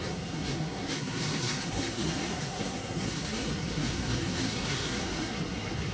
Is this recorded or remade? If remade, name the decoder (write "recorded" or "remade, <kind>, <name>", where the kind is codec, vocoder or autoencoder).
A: remade, codec, SNAC